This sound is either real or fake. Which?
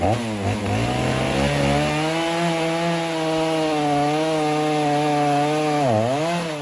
real